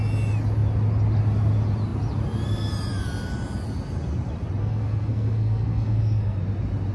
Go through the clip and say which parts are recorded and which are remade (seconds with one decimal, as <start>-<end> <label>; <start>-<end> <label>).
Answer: 0.0-4.6 recorded; 4.6-6.4 remade; 6.4-6.9 recorded